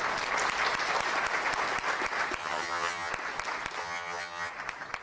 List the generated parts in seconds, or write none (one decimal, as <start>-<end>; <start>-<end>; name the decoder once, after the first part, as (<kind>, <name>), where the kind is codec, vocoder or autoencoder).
2.4-3.1 (vocoder, HiFi-GAN); 3.8-4.5

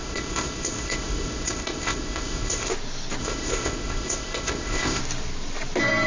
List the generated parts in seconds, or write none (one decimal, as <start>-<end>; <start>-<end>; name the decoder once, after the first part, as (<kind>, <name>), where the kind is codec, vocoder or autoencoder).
0.0-2.7 (codec, ZipCodec); 3.2-5.0